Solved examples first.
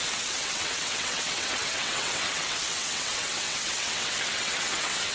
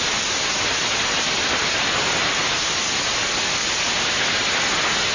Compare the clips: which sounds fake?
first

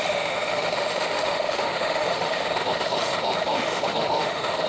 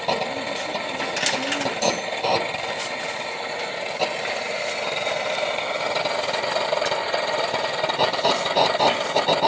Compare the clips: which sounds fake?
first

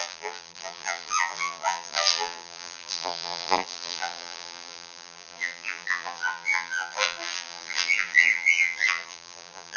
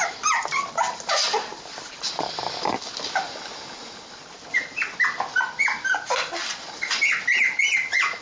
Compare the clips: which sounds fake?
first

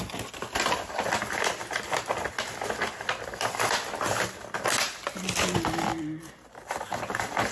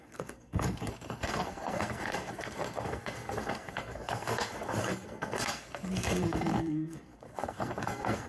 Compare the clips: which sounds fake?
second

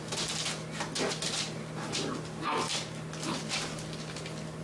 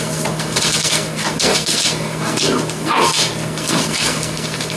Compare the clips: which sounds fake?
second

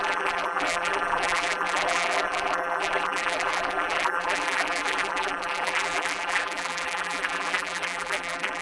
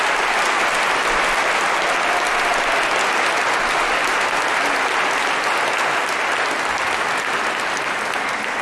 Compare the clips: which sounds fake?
first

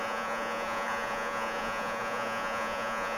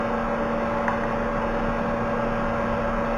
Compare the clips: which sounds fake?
first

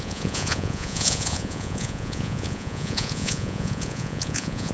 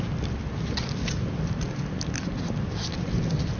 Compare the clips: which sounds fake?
first